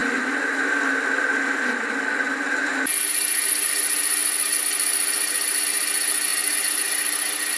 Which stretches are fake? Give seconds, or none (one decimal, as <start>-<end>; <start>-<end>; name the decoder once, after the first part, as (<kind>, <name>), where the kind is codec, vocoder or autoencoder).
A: none